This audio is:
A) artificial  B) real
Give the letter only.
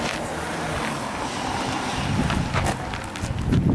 B